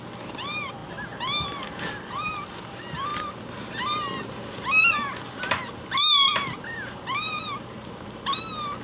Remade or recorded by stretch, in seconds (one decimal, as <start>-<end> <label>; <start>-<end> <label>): 0.0-8.8 remade